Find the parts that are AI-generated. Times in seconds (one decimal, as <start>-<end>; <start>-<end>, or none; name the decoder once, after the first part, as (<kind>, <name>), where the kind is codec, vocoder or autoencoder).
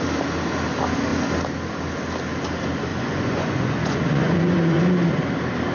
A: 2.9-4.8 (vocoder, Vocos)